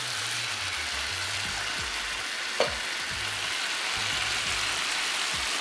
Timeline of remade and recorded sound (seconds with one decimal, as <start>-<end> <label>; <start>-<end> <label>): 0.0-5.6 recorded